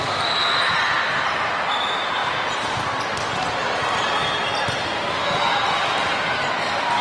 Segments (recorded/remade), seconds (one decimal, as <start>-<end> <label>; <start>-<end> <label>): 0.0-7.0 recorded